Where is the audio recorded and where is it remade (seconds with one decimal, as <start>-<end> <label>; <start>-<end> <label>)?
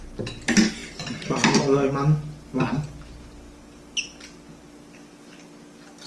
0.0-6.1 recorded